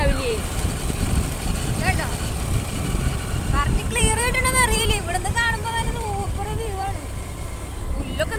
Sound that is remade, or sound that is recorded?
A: remade